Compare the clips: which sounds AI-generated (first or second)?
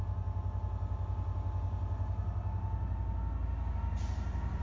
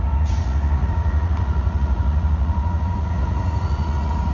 second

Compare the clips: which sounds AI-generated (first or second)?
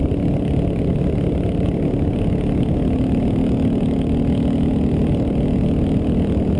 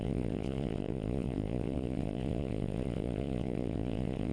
second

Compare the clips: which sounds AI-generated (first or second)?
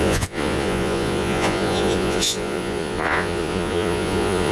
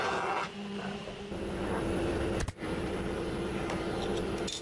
first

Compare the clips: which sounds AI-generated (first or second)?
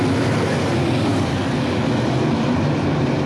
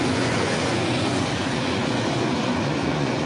second